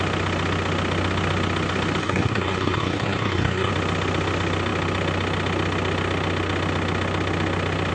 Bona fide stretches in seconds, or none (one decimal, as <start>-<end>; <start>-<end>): 0.0-2.0; 3.7-7.9